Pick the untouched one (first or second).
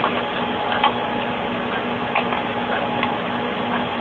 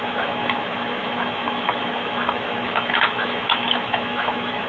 first